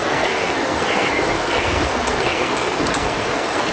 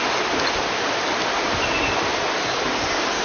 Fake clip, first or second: first